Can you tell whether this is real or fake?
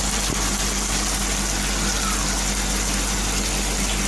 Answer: real